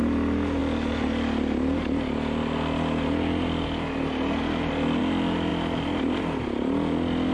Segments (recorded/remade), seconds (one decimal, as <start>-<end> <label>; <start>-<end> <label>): 0.0-7.3 recorded